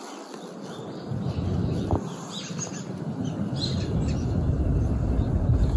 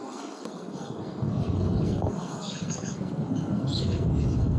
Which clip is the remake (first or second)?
second